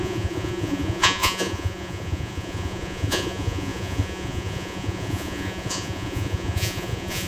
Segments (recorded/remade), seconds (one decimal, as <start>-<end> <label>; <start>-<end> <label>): 0.0-7.3 remade